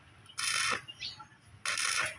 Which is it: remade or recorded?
recorded